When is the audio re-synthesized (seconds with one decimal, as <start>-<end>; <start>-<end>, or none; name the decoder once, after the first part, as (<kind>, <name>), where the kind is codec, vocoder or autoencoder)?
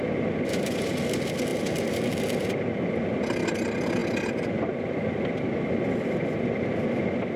none